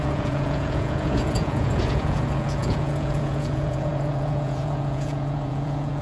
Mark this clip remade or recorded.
remade